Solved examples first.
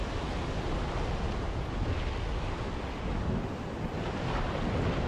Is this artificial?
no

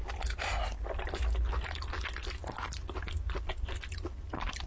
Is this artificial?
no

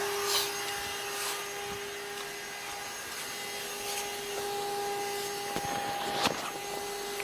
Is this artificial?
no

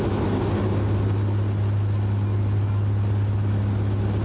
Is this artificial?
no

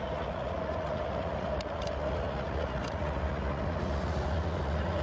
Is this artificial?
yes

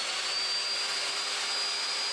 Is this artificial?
no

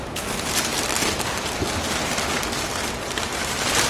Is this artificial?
no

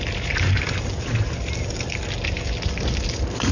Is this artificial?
no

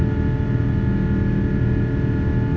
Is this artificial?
no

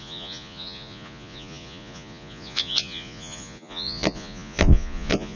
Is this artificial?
yes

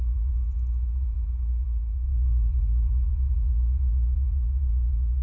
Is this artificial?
yes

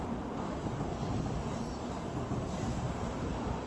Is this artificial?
no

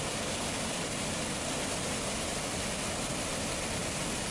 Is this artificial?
no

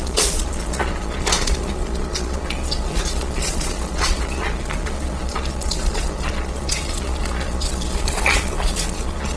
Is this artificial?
yes